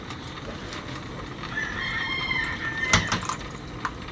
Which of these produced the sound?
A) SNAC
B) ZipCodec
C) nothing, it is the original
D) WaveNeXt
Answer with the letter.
C